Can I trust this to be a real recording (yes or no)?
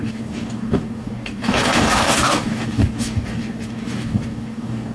no